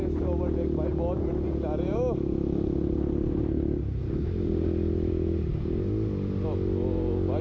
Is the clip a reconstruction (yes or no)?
no